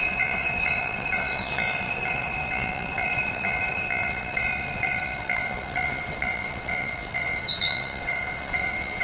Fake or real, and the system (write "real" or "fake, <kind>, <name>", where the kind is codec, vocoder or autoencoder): fake, vocoder, WaveNeXt